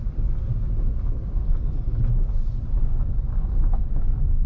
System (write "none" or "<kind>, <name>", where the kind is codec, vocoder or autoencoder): none